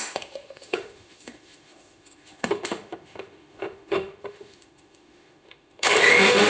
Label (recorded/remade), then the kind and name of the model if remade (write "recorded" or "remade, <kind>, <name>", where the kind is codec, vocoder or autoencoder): remade, autoencoder, DAC-VAE